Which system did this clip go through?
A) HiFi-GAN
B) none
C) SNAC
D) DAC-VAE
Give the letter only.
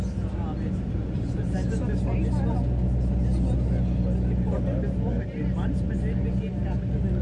B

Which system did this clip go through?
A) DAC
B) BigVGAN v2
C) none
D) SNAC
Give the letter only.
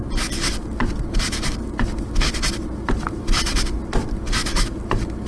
C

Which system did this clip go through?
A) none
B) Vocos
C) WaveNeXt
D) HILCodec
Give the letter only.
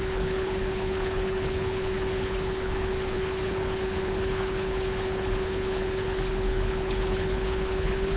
D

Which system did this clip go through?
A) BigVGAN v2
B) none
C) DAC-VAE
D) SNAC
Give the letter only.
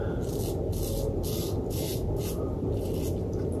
B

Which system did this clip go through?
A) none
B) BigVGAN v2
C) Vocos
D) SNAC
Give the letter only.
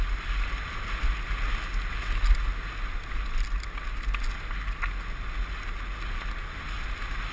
A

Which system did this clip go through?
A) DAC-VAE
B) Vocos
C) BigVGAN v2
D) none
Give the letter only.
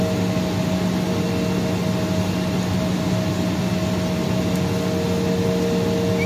D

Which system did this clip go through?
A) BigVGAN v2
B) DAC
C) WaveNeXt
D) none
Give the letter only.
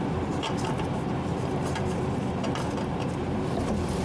D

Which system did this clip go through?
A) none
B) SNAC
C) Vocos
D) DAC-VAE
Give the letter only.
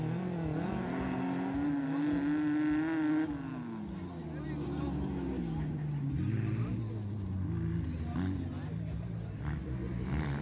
A